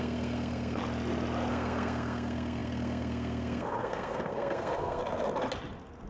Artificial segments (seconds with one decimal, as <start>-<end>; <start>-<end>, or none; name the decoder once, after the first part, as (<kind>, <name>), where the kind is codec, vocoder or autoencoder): 0.0-0.8 (codec, SNAC); 1.5-5.0